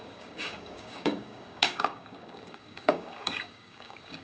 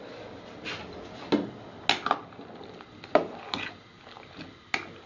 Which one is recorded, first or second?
second